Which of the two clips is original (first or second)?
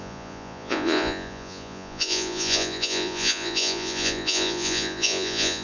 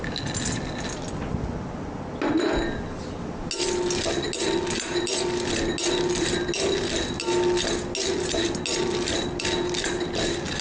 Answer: second